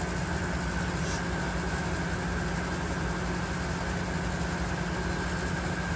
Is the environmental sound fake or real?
real